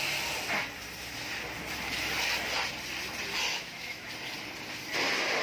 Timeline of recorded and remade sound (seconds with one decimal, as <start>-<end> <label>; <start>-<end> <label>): 0.0-3.5 recorded; 3.5-4.1 remade; 4.1-5.4 recorded